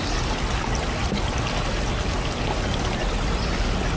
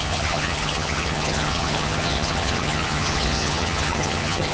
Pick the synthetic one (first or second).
second